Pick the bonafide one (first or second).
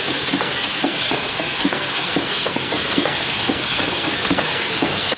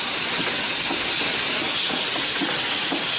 second